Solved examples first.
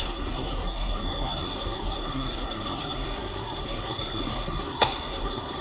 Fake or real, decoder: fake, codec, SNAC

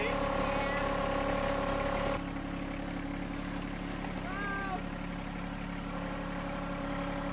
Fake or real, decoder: real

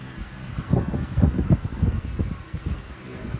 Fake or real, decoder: fake, codec, SNAC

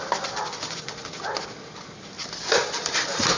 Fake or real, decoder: real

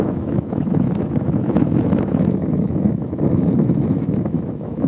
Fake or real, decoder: fake, autoencoder, DAC-VAE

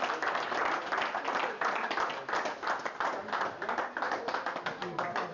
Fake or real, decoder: real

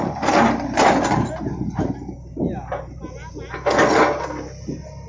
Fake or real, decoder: real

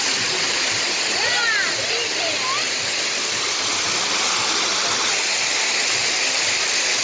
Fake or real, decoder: fake, vocoder, BigVGAN v2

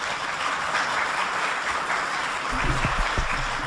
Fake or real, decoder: fake, vocoder, BigVGAN v2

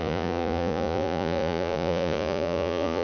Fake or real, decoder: fake, vocoder, Vocos